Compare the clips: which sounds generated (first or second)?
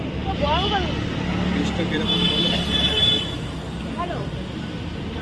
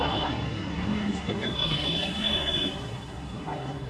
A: second